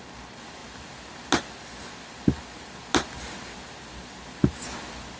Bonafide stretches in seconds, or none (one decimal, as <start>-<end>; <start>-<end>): 0.0-5.2